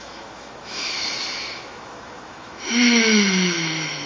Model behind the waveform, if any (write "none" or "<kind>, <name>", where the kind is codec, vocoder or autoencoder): autoencoder, DAC-VAE